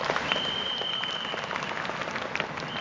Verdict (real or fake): real